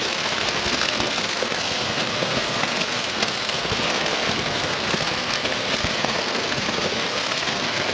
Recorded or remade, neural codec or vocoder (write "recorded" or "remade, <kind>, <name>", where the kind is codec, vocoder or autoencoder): remade, codec, SNAC